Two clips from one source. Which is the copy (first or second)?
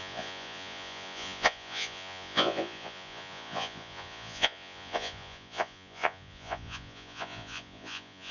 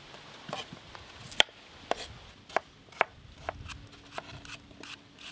first